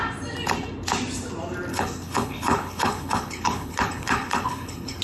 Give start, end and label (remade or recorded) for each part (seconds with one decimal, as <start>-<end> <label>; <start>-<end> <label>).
0.0-1.7 recorded; 1.7-5.0 remade